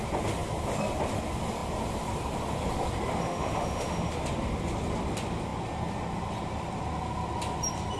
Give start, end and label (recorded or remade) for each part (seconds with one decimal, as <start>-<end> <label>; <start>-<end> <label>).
0.0-3.2 recorded; 3.2-4.1 remade; 4.1-8.0 recorded